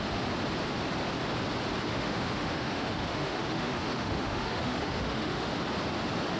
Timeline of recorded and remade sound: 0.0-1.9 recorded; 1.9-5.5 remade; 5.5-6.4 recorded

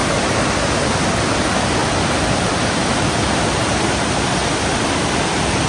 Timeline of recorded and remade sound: 0.0-5.7 recorded

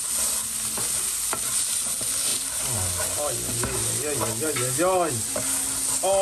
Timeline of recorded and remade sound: 0.0-6.2 recorded

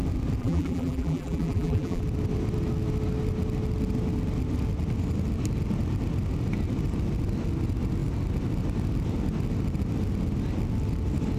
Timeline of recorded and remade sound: 0.0-0.4 recorded; 0.4-2.0 remade; 2.0-11.4 recorded

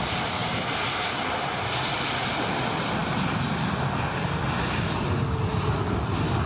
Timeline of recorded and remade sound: 0.0-0.4 recorded; 0.4-1.2 remade; 1.2-6.5 recorded

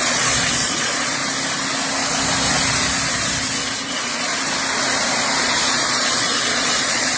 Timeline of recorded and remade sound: 0.0-1.2 remade; 1.2-3.9 recorded; 3.9-4.3 remade; 4.3-5.4 recorded; 5.4-7.2 remade